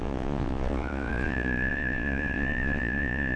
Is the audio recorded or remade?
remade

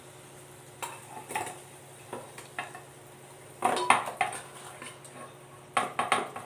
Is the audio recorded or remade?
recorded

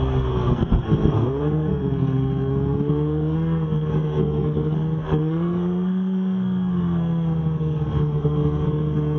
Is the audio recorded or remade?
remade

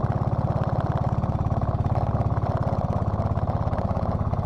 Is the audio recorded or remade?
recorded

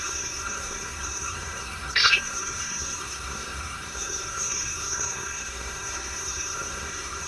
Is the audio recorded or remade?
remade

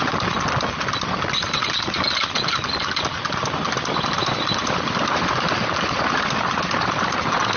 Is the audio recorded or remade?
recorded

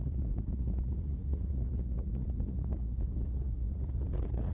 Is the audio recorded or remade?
remade